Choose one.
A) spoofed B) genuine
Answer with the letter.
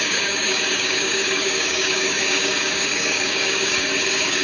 A